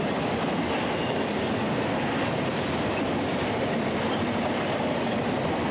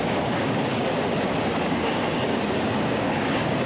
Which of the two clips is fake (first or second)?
second